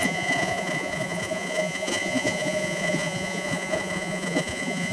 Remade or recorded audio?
remade